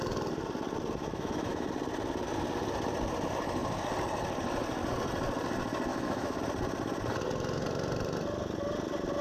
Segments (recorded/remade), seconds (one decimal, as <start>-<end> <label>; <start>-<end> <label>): 0.0-1.0 recorded; 1.0-1.7 remade; 1.7-5.9 recorded; 5.9-6.4 remade; 6.4-9.2 recorded